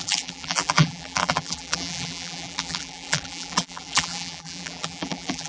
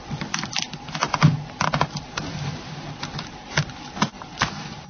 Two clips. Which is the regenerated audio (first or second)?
first